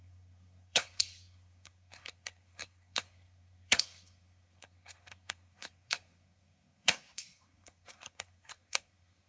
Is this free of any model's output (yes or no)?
no